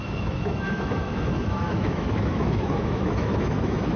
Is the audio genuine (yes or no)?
no